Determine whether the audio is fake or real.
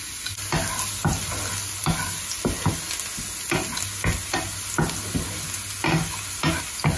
real